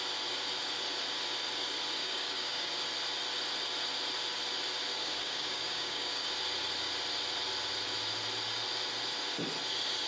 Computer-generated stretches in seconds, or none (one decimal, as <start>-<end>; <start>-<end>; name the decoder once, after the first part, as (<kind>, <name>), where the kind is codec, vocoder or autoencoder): 2.0-2.7 (codec, DAC); 4.9-6.3